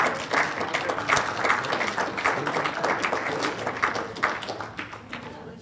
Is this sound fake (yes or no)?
no